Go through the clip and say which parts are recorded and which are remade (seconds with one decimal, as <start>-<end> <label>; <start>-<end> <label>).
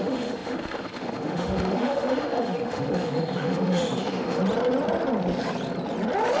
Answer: 0.0-4.4 remade; 4.4-6.4 recorded